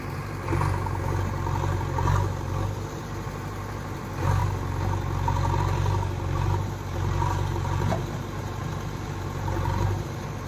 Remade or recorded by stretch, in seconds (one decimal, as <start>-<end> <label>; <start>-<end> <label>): 0.0-4.4 remade; 4.4-5.6 recorded; 5.6-10.5 remade